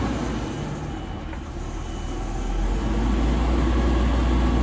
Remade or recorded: recorded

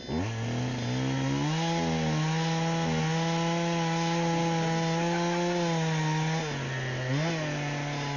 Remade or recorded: recorded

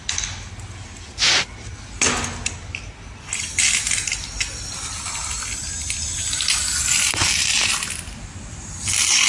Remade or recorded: recorded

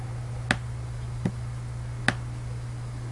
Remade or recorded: recorded